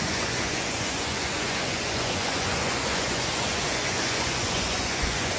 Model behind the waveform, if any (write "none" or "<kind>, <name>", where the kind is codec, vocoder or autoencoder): vocoder, Vocos